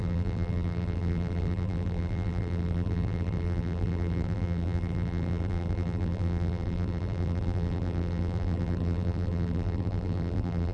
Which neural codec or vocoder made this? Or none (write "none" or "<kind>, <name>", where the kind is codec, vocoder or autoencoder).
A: vocoder, BigVGAN v2